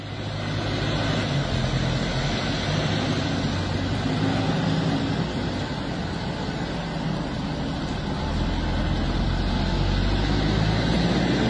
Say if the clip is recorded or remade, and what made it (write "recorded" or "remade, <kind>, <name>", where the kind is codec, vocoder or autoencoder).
recorded